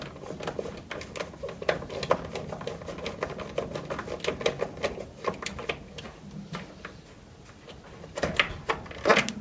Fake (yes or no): no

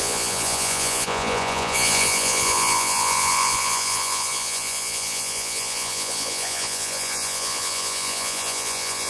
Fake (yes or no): yes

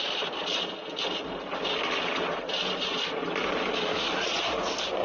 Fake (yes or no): no